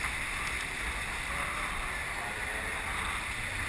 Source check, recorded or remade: remade